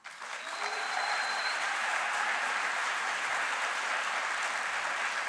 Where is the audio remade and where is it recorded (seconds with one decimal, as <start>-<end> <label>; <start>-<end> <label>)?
0.0-0.7 recorded; 0.7-3.9 remade; 3.9-5.3 recorded